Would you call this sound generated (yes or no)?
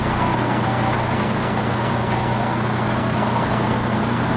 yes